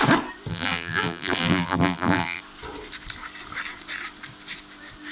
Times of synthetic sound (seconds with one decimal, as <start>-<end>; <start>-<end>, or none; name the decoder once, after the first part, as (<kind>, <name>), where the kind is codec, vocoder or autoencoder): 0.5-2.4 (vocoder, BigVGAN v2)